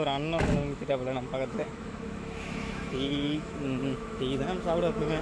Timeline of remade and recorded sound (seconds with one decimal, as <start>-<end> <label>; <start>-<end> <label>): 0.0-5.2 remade